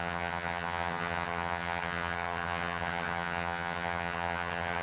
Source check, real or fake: fake